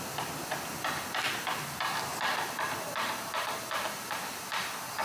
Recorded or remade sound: recorded